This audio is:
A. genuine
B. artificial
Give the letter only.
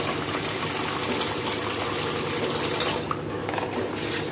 A